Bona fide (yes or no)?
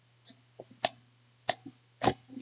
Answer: yes